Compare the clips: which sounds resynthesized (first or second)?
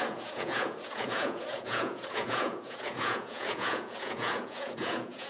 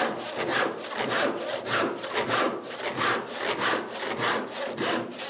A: first